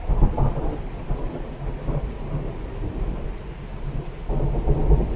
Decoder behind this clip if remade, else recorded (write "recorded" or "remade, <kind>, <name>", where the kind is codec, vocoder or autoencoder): recorded